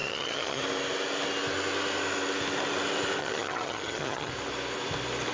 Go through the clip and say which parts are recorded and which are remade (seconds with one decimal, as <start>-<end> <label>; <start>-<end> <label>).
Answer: 0.0-0.6 remade; 0.6-3.2 recorded; 3.2-4.3 remade; 4.3-5.3 recorded